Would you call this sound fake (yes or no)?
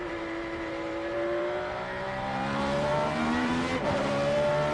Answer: yes